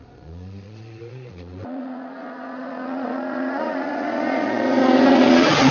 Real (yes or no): no